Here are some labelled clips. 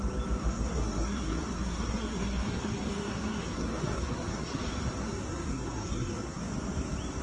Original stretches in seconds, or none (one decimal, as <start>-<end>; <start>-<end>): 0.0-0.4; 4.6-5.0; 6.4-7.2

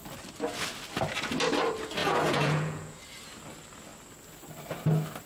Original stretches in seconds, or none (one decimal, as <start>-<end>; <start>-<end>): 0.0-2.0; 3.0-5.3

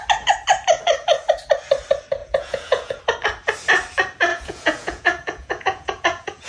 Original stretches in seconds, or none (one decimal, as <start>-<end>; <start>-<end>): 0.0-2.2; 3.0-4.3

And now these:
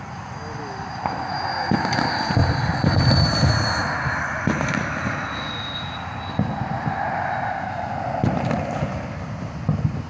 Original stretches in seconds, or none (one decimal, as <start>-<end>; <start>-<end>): 0.0-10.1

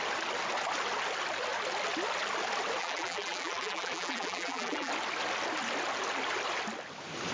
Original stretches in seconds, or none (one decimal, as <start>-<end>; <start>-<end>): 0.0-2.8; 4.9-7.3

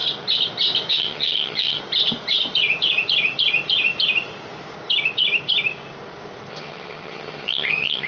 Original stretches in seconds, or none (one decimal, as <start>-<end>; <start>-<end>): 0.0-0.9; 1.8-6.5